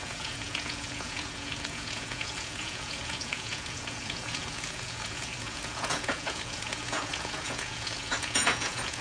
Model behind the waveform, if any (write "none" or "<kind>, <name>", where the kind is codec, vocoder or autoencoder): vocoder, Vocos